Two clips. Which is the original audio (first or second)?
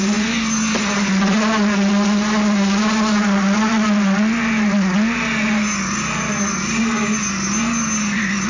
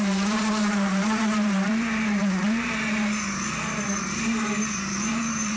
first